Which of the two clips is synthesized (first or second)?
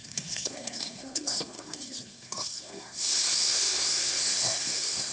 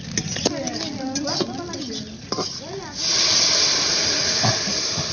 first